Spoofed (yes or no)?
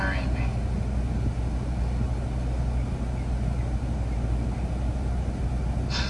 no